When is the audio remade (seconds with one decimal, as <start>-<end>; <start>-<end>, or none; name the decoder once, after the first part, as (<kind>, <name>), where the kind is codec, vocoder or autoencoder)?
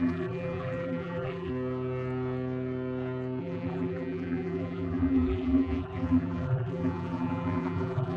0.0-1.5 (vocoder, BigVGAN v2); 3.4-8.2